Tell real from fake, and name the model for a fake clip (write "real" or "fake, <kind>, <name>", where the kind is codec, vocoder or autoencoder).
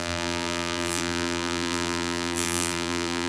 fake, vocoder, BigVGAN v2